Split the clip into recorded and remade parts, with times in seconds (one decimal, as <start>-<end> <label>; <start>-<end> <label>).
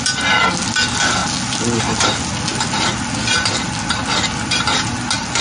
0.0-5.4 recorded